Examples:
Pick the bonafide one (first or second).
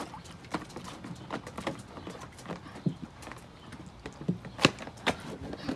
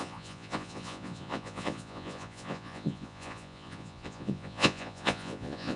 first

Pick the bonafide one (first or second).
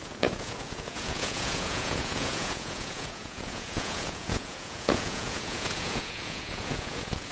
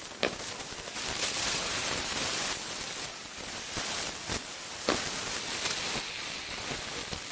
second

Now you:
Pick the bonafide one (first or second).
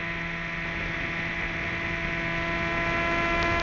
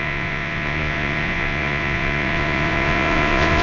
first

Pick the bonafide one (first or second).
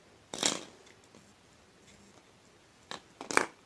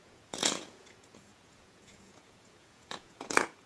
first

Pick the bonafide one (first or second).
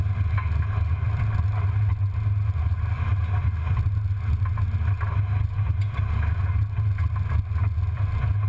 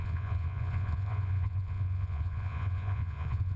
first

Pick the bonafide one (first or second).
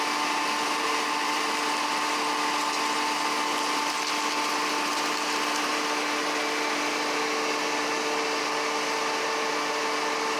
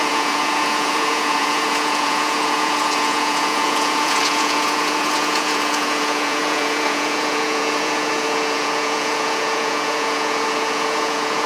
first